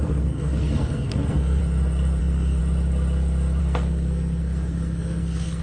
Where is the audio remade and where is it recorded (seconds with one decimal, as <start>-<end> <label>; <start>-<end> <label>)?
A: 0.0-1.6 remade; 1.6-2.2 recorded; 2.2-2.6 remade; 2.6-3.6 recorded; 3.6-5.6 remade